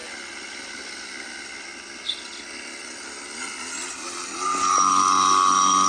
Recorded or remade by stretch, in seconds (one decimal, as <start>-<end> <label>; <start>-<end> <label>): 0.0-5.9 recorded